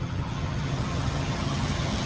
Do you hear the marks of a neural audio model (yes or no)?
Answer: yes